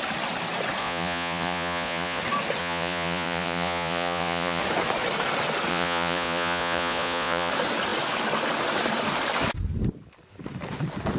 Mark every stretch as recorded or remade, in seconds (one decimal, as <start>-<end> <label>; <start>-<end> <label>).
0.0-0.8 recorded; 0.8-2.2 remade; 2.2-2.6 recorded; 2.6-4.6 remade; 4.6-5.7 recorded; 5.7-7.5 remade; 7.5-11.2 recorded